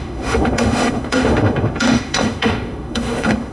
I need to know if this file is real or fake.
fake